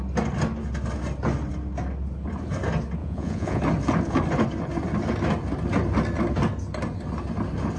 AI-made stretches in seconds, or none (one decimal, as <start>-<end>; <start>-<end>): 3.0-3.6